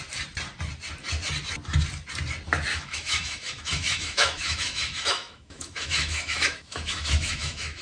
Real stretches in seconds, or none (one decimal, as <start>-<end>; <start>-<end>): 0.0-2.7